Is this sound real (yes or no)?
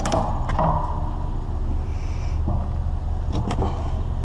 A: yes